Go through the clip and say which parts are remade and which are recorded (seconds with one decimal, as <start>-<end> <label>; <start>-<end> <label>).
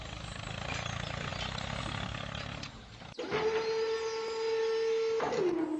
0.0-5.8 recorded